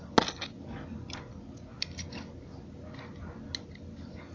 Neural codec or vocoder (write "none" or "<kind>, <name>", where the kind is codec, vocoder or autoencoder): none